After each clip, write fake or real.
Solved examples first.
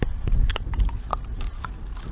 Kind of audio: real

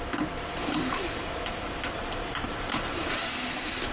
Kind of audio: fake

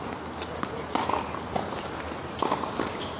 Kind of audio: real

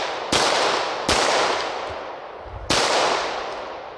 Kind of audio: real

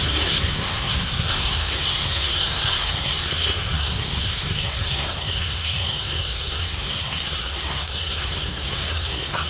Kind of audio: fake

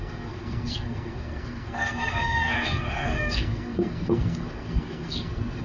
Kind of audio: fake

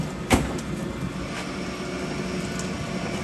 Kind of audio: real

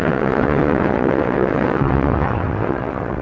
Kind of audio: fake